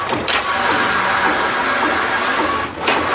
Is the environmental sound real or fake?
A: real